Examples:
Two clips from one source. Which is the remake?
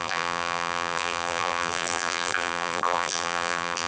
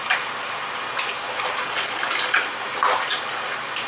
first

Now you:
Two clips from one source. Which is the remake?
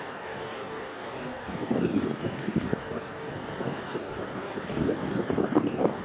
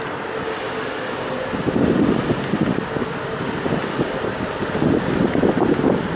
first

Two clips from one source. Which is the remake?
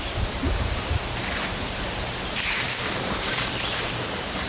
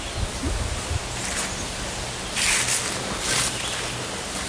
first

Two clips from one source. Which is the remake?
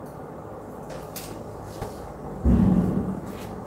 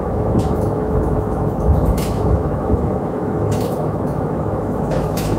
second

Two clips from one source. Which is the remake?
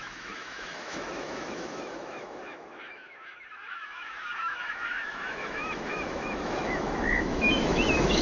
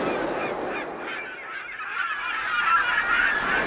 first